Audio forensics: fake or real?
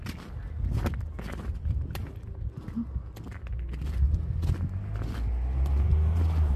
real